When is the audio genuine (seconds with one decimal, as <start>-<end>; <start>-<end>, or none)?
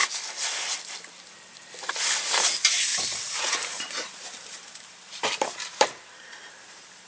0.0-2.9